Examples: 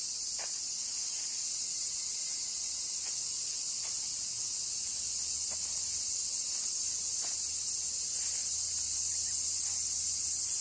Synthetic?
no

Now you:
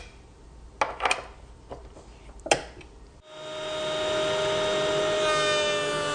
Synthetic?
no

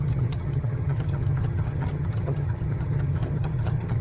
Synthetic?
yes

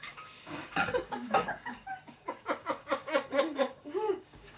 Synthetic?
yes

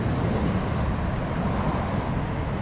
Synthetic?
no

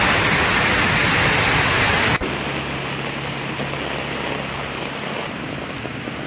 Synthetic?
no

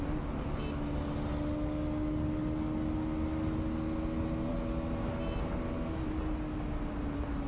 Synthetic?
no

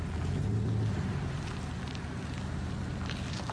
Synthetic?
no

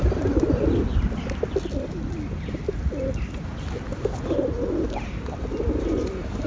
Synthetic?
no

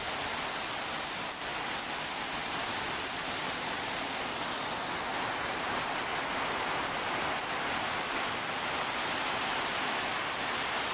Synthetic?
no